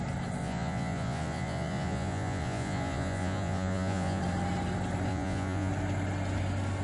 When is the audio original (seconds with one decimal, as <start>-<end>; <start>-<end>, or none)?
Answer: 0.0-0.4; 4.2-5.1; 5.7-6.8